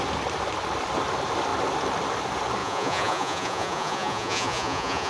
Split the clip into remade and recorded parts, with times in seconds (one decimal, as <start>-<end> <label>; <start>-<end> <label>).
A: 0.0-2.6 recorded; 2.6-5.1 remade